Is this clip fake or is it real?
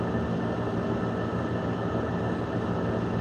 real